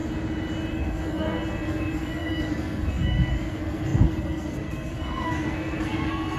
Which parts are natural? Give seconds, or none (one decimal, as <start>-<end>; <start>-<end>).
0.0-0.7